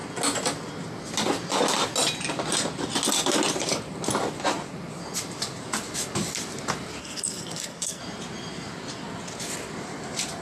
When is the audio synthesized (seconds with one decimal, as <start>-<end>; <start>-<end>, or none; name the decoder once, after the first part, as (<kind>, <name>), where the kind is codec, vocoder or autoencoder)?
7.0-8.0 (codec, SNAC)